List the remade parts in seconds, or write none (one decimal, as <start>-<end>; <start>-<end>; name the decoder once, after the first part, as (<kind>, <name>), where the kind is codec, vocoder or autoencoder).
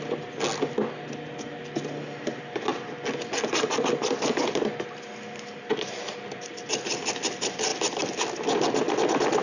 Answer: none